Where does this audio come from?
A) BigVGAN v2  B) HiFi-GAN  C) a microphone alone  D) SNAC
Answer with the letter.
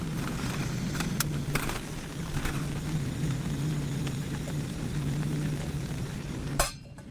A